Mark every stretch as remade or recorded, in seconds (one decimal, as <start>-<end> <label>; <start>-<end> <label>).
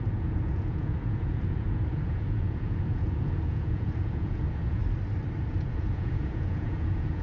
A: 0.0-4.8 remade; 4.8-5.5 recorded; 5.5-7.2 remade